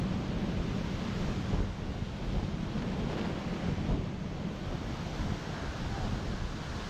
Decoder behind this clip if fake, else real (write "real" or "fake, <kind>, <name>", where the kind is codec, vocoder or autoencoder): real